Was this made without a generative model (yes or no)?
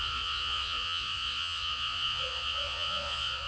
no